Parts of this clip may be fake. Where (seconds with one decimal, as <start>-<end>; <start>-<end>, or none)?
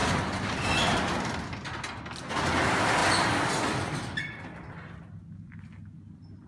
none